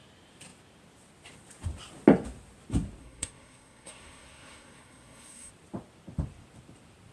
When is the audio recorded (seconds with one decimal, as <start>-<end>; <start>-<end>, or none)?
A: 0.0-3.0; 5.5-7.1